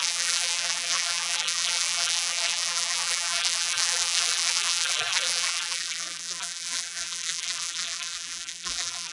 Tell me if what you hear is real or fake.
fake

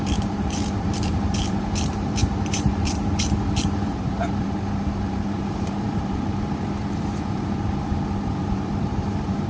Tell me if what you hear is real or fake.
fake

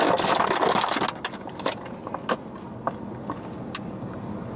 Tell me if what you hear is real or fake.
real